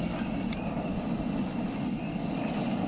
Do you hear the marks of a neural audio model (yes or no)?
no